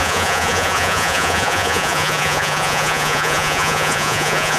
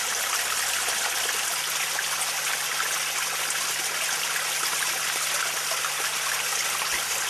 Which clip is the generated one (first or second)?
first